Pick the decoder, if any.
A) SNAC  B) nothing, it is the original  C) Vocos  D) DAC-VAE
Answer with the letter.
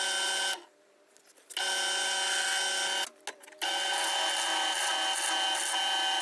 B